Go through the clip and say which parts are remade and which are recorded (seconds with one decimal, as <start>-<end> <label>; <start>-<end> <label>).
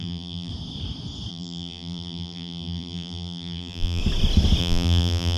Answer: 0.0-0.5 remade; 0.5-1.3 recorded; 1.3-4.0 remade; 4.0-4.6 recorded; 4.6-5.4 remade